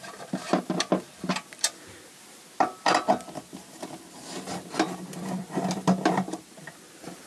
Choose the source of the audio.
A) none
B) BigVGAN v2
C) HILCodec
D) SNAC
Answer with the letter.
A